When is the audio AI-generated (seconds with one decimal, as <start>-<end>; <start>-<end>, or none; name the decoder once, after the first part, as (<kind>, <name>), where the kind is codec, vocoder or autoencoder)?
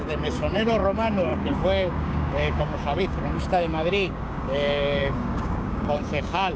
0.0-6.6 (codec, DAC)